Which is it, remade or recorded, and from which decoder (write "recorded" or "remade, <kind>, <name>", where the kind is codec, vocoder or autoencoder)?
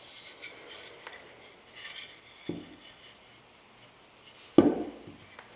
recorded